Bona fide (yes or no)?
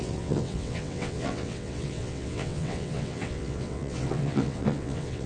no